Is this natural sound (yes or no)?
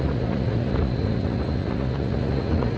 no